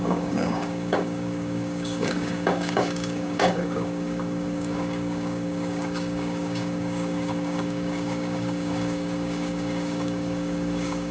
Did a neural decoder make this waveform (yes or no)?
yes